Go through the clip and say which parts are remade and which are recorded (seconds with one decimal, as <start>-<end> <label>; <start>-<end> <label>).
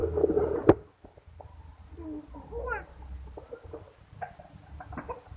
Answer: 0.0-5.4 recorded